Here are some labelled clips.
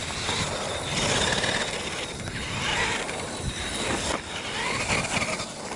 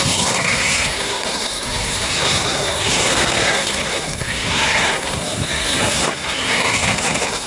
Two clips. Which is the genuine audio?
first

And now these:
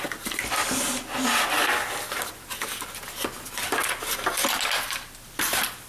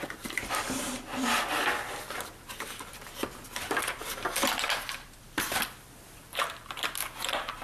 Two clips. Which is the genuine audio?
first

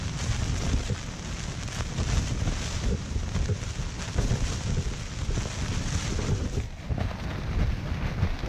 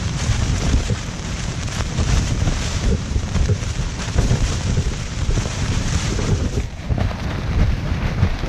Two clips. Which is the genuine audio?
first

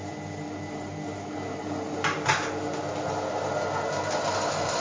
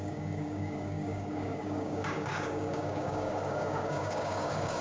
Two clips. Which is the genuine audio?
first